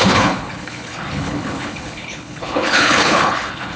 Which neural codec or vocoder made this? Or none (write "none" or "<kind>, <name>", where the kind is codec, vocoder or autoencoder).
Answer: codec, HILCodec